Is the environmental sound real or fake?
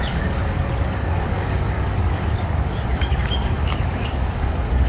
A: fake